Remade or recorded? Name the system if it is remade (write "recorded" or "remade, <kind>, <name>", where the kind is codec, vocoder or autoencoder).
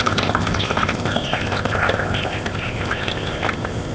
remade, codec, ZipCodec